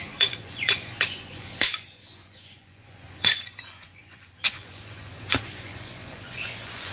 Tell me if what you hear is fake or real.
fake